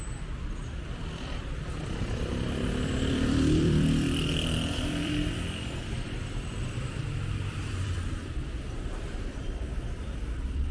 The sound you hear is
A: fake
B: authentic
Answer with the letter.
A